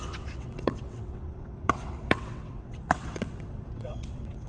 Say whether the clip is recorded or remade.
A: remade